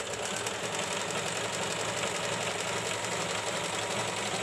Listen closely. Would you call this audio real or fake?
real